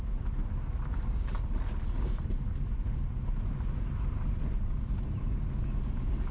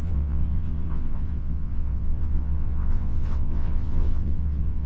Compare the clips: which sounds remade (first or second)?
second